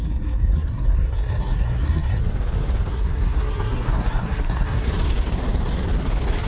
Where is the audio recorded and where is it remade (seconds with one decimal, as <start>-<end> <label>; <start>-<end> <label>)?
0.0-2.2 remade; 2.2-2.9 recorded; 2.9-4.9 remade; 4.9-6.5 recorded